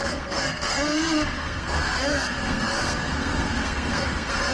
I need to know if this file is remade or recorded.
remade